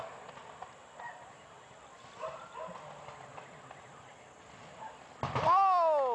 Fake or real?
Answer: real